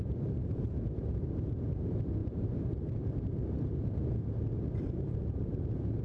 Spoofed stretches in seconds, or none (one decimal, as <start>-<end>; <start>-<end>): 0.0-6.0